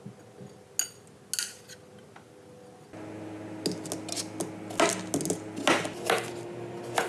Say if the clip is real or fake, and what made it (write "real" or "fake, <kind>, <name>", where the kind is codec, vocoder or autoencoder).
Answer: real